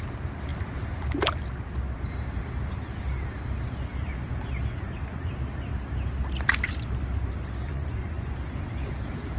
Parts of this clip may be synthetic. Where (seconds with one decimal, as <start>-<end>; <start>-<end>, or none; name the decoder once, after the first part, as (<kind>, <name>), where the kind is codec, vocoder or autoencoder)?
7.7-8.3 (vocoder, Vocos)